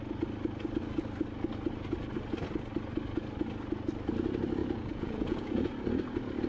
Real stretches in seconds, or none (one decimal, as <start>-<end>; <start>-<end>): 0.0-4.6; 5.7-6.5